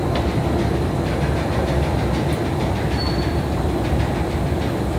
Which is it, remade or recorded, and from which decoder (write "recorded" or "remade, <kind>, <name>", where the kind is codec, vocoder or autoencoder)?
recorded